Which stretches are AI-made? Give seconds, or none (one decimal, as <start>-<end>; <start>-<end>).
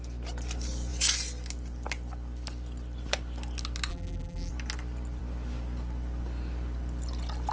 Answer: 3.9-4.5